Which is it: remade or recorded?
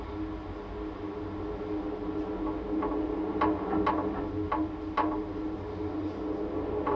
recorded